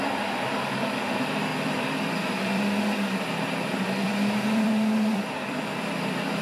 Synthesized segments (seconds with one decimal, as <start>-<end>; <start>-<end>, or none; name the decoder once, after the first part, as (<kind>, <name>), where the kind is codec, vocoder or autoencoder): 0.0-6.4 (vocoder, BigVGAN v2)